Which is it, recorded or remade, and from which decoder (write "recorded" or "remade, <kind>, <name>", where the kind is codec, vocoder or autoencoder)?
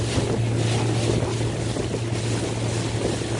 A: recorded